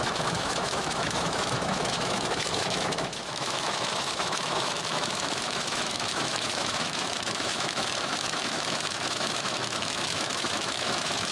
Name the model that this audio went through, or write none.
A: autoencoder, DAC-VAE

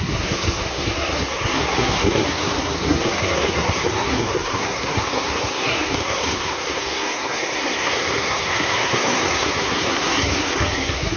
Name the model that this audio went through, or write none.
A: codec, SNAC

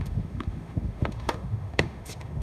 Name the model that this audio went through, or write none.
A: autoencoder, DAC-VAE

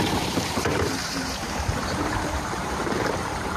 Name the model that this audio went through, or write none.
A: vocoder, BigVGAN v2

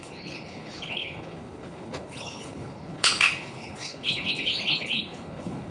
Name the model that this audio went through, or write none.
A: codec, HILCodec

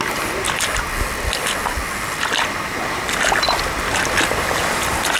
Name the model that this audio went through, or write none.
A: none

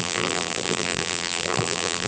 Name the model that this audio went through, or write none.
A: vocoder, BigVGAN v2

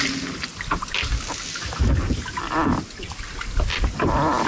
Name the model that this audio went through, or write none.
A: none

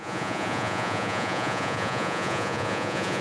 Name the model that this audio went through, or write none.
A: vocoder, Vocos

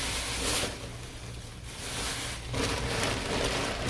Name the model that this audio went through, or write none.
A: none